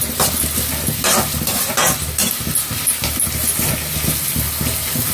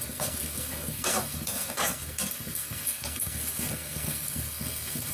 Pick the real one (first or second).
first